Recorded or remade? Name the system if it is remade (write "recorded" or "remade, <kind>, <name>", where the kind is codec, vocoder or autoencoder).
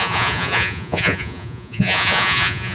remade, vocoder, Vocos